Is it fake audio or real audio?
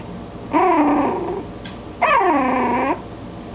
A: real